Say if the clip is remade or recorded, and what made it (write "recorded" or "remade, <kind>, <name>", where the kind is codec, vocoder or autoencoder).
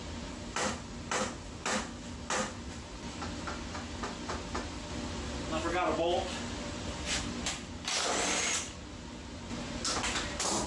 recorded